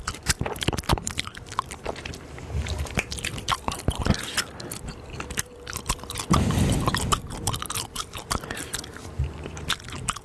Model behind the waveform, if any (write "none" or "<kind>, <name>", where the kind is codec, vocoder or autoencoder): vocoder, BigVGAN v2